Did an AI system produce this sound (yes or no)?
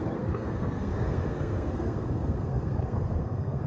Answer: yes